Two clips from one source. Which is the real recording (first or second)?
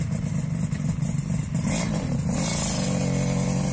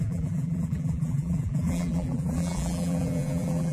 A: first